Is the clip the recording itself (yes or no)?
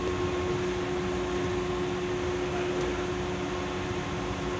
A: yes